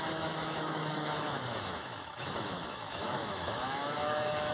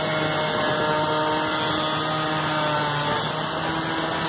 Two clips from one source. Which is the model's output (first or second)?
first